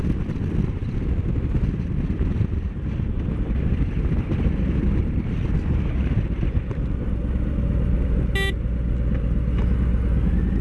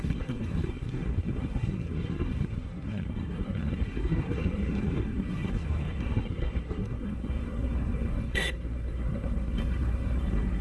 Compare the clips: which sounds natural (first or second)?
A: first